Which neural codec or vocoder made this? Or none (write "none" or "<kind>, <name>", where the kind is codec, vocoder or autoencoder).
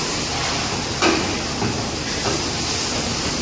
none